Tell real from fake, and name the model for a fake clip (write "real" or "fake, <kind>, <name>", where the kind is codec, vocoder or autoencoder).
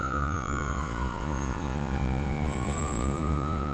fake, vocoder, Vocos